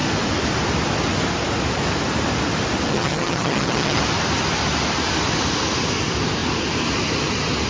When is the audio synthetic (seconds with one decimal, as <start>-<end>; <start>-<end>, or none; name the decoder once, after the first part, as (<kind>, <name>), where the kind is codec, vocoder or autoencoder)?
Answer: 2.9-4.0 (vocoder, HiFi-GAN)